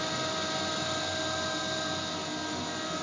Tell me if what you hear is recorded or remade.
recorded